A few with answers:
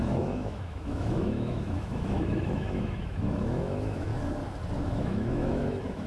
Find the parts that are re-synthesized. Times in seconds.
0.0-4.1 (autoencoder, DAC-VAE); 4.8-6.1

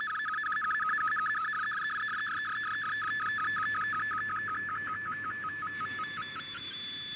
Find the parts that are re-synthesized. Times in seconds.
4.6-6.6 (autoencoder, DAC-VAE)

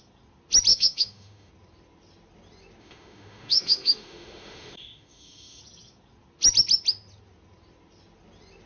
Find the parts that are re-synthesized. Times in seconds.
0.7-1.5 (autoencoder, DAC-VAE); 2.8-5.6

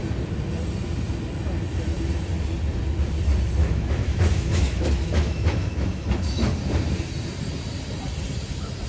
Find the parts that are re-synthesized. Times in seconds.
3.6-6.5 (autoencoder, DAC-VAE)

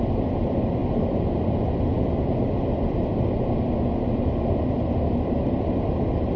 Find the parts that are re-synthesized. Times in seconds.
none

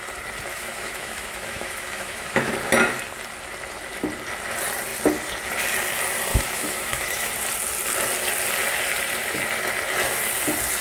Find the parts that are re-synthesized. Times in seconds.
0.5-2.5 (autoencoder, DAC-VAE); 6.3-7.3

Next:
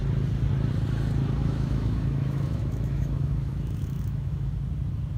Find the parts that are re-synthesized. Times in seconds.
1.4-4.5 (autoencoder, DAC-VAE)